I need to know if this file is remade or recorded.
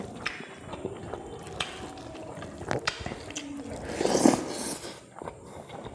recorded